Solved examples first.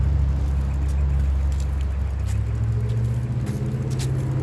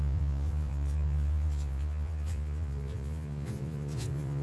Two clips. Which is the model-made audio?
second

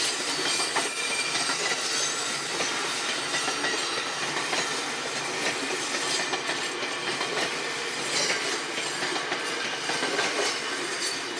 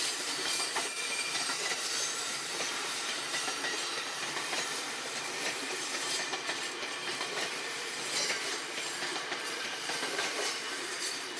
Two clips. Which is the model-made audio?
second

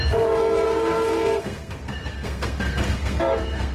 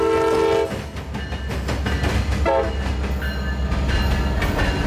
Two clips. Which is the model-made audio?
first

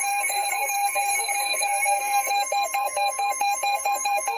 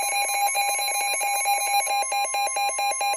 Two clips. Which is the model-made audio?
first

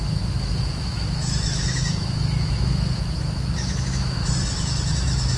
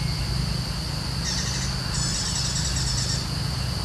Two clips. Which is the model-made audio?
first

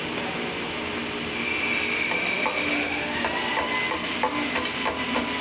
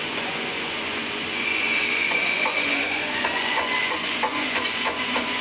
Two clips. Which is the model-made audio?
second